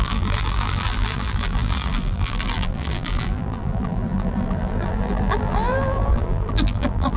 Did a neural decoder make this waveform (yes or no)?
yes